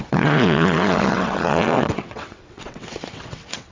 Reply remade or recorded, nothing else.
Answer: remade